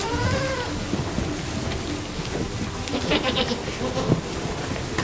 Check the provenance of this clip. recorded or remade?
recorded